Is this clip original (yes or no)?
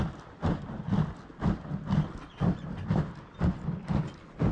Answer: yes